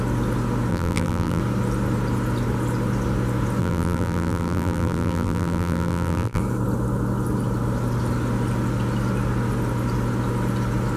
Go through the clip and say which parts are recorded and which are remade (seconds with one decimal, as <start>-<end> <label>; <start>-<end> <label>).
0.0-0.7 recorded; 0.7-1.4 remade; 1.4-3.6 recorded; 3.6-6.4 remade; 6.4-11.0 recorded